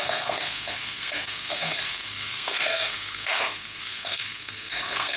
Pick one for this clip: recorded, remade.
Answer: remade